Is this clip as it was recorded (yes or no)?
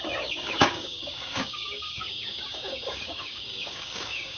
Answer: no